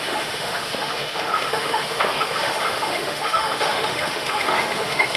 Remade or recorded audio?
remade